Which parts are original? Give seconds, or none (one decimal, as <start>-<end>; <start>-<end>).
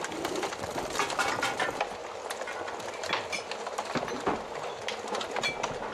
0.0-5.9